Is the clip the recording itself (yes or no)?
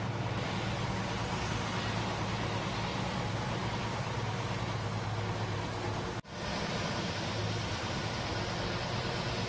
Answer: yes